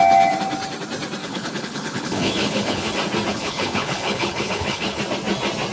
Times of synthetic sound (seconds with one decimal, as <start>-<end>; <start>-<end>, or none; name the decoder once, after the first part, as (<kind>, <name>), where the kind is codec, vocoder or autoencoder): 1.2-2.9 (codec, HILCodec); 3.3-5.0